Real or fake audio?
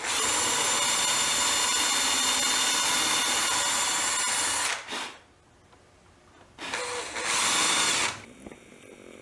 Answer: real